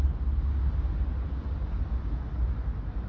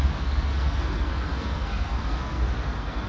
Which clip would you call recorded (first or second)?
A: first